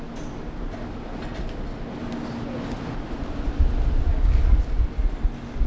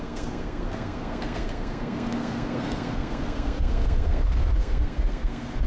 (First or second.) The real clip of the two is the first